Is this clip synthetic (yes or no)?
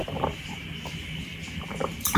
yes